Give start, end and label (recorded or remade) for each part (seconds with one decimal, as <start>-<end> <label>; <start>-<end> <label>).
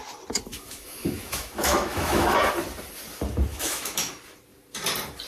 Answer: 0.0-0.5 recorded; 0.5-2.4 remade; 2.4-3.5 recorded; 3.5-4.1 remade; 4.1-5.3 recorded